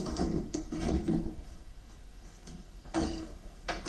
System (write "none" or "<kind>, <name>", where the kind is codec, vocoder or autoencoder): codec, SNAC